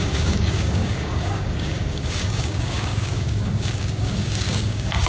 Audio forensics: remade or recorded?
remade